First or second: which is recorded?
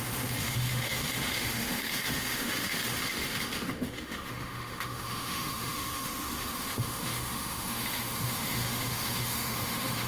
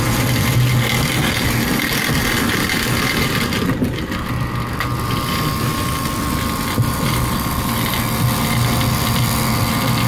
second